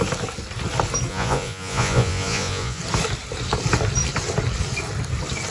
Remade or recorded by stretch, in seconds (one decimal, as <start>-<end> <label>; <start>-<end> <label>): 0.0-1.1 recorded; 1.1-2.8 remade; 2.8-5.5 recorded